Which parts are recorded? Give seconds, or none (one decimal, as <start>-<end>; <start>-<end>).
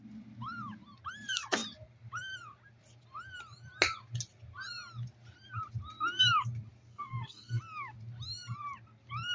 0.0-6.9; 7.6-9.3